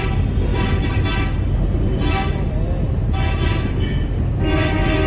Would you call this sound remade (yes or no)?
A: no